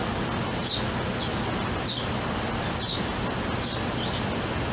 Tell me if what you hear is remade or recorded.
recorded